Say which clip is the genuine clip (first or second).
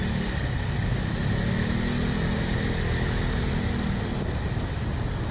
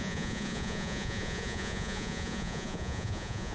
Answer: first